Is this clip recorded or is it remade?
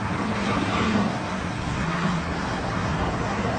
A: remade